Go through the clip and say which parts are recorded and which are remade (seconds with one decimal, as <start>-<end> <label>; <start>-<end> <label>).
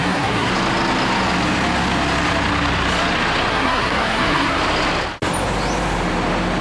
0.0-0.5 remade; 0.5-3.5 recorded; 3.5-4.6 remade; 4.6-6.6 recorded